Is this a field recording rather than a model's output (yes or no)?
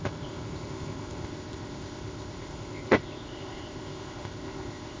no